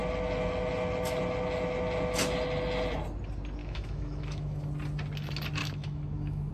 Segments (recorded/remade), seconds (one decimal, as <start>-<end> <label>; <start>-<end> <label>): 0.0-3.6 recorded; 3.6-4.7 remade; 4.7-5.6 recorded; 5.6-6.5 remade